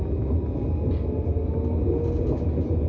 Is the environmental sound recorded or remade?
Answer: recorded